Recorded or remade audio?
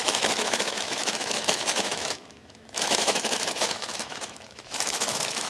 remade